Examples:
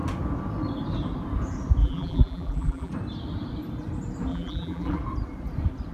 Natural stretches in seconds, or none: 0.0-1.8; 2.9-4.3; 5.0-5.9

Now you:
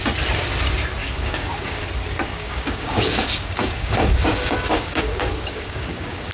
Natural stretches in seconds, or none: 0.0-1.0; 1.8-2.3

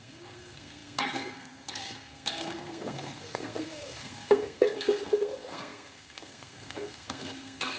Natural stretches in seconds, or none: none

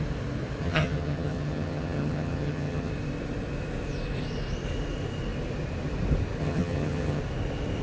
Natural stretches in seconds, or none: 0.0-0.6; 2.9-6.4; 7.2-7.8

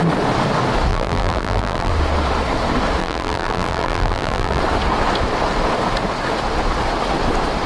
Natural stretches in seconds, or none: 0.0-0.9; 1.9-3.0; 4.6-7.7

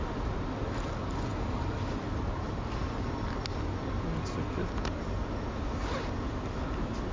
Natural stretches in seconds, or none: 0.0-7.1

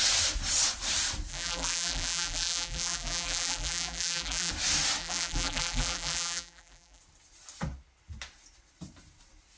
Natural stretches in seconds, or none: 0.0-1.3; 4.5-5.0; 7.0-9.6